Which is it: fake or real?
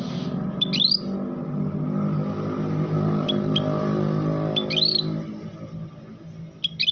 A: real